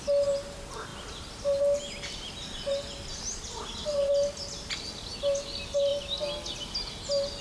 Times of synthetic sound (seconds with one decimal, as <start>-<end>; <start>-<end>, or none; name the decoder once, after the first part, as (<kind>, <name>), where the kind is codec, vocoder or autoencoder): none